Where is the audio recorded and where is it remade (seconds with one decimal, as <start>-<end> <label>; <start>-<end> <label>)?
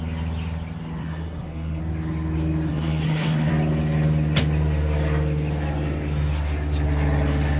0.0-1.0 recorded; 1.0-1.8 remade; 1.8-2.7 recorded; 2.7-3.5 remade; 3.5-7.6 recorded